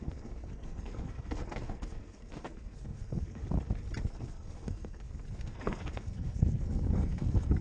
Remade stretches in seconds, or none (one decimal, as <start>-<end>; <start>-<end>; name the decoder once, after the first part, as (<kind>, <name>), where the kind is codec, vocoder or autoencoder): 0.0-3.4 (codec, SNAC); 4.1-7.6